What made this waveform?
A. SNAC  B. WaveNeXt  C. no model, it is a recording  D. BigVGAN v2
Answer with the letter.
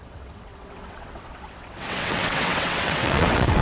B